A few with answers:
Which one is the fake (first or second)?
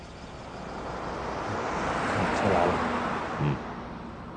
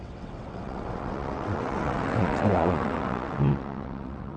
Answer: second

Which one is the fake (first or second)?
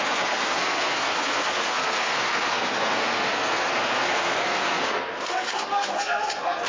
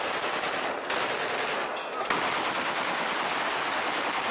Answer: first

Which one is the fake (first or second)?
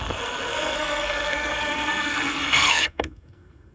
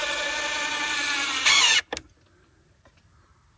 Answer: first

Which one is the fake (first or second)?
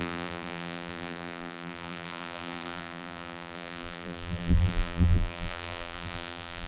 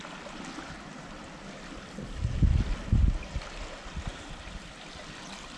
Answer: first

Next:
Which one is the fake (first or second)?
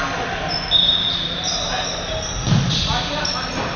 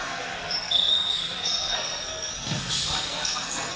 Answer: second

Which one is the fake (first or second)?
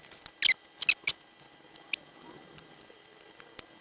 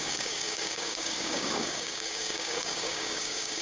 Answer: second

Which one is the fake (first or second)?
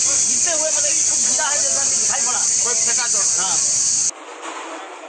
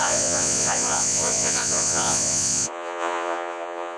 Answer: second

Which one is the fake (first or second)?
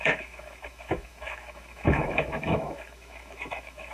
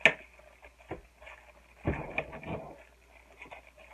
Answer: first